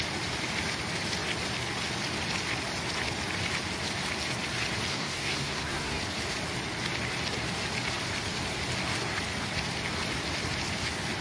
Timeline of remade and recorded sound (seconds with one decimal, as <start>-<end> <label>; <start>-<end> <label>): 0.0-4.9 recorded; 4.9-6.0 remade; 6.0-11.2 recorded